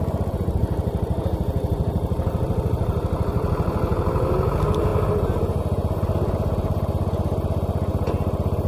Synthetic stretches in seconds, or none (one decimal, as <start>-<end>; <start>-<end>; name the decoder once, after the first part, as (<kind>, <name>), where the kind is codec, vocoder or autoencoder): none